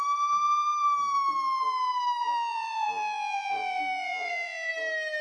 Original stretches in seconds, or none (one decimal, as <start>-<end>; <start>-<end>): 0.0-2.2; 4.7-5.2